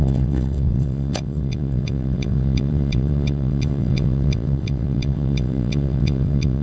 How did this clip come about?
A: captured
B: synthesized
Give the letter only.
B